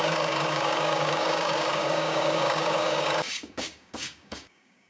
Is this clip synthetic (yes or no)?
yes